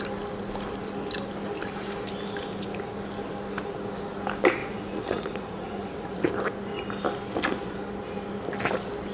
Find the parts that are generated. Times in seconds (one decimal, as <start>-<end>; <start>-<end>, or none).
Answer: 4.6-6.2